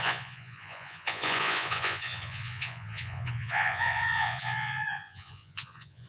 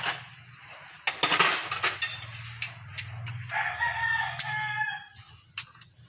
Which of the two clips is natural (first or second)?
second